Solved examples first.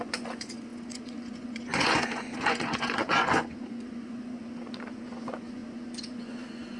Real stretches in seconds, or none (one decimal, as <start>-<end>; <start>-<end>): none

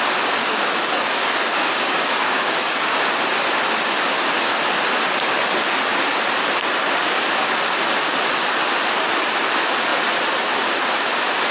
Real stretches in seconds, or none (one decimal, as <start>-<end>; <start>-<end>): 0.0-0.4; 3.0-11.5

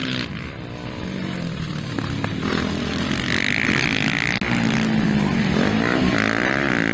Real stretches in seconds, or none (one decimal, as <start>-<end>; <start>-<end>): 0.0-6.9

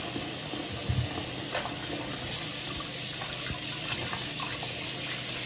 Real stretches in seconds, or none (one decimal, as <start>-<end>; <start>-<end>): 0.0-5.5

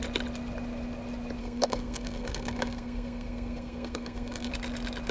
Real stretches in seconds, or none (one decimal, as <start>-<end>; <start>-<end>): 0.0-1.4; 4.5-5.1